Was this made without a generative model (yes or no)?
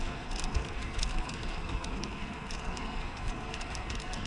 no